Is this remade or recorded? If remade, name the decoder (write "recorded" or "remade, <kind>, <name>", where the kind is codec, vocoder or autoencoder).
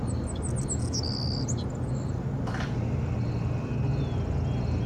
recorded